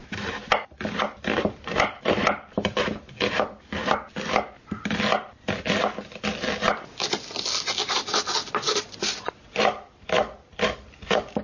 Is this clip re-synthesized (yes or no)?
no